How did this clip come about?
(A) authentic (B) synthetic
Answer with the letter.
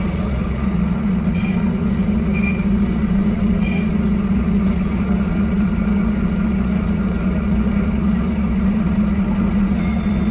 B